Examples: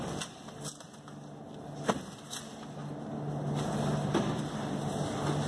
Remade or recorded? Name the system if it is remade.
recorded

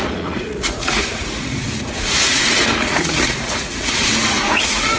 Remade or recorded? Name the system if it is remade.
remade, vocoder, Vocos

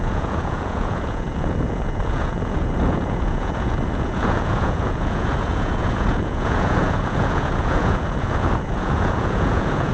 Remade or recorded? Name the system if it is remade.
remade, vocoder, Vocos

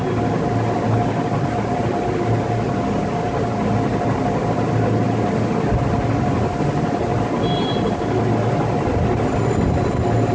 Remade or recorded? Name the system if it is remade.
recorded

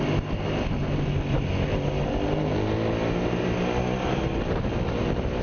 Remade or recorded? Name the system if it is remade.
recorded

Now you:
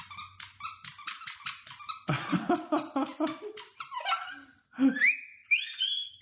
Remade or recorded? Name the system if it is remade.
recorded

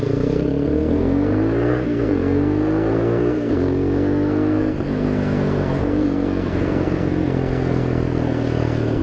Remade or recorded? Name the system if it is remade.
remade, codec, SNAC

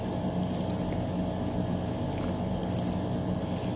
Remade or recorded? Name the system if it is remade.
recorded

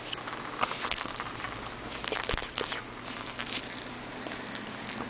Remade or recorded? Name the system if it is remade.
recorded